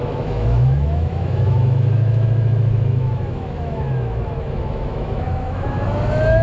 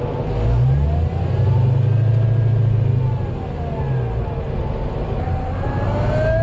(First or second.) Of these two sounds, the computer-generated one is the first